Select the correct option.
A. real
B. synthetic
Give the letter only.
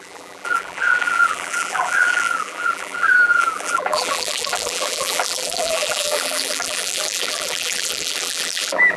B